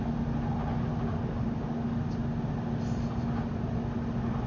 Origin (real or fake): real